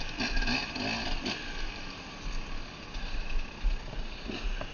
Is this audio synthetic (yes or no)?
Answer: no